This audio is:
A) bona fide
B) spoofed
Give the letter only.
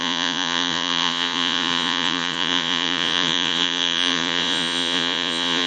B